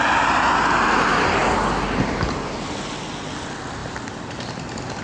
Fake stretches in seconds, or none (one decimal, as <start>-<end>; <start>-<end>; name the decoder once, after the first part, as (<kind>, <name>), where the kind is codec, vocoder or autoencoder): none